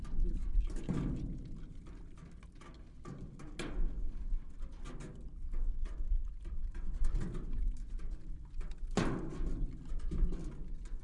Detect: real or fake real